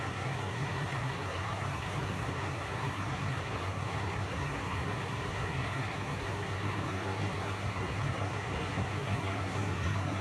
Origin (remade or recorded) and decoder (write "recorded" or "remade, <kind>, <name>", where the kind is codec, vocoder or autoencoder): remade, codec, SNAC